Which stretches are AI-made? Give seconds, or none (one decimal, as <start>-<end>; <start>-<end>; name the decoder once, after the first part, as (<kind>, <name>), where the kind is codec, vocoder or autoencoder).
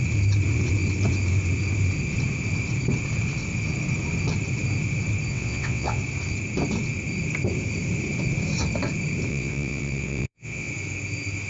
5.3-6.0 (vocoder, WaveNeXt); 9.3-10.7